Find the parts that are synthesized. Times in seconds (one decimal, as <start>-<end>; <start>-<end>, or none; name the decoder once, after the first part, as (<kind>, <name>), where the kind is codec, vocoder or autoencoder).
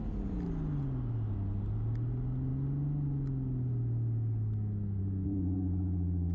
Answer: none